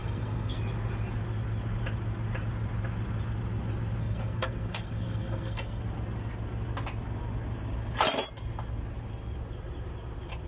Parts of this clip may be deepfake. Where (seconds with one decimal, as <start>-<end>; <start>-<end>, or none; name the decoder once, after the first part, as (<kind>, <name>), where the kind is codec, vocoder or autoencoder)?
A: 0.0-0.6 (codec, SNAC); 4.0-5.8